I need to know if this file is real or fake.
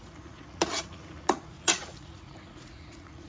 fake